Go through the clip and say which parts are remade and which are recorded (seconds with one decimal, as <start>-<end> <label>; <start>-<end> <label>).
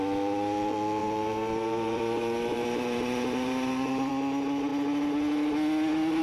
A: 0.0-1.0 recorded; 1.0-4.1 remade; 4.1-6.2 recorded